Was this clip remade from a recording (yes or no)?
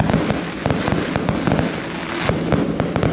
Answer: no